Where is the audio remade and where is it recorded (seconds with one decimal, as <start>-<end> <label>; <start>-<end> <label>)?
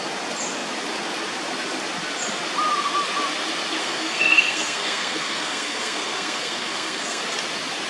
0.0-3.8 recorded; 3.8-7.2 remade; 7.2-7.9 recorded